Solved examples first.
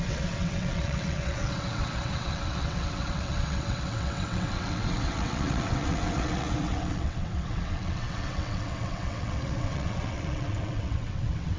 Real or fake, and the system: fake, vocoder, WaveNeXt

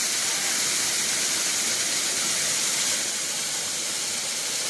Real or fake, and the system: real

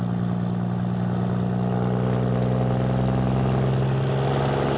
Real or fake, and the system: real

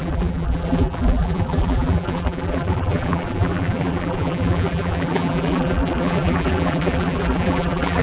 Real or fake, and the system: fake, vocoder, BigVGAN v2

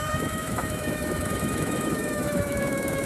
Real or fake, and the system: fake, autoencoder, DAC-VAE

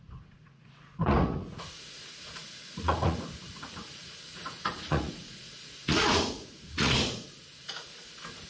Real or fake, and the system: fake, vocoder, Vocos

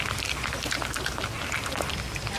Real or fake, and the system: real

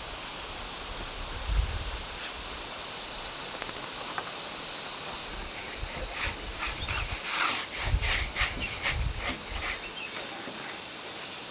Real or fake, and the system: real